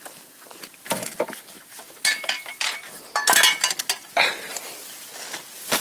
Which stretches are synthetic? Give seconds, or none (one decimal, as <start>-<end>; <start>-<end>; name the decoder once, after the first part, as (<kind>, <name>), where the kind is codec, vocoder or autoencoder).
none